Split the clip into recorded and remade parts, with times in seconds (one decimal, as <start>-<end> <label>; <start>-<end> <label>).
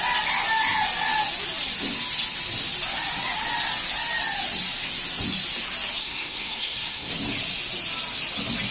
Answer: 0.0-6.0 recorded; 6.0-7.1 remade; 7.1-8.7 recorded